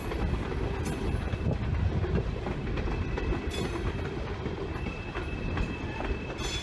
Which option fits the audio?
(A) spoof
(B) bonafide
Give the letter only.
B